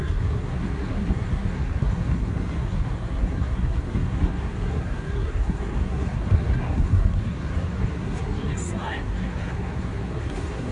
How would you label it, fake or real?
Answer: fake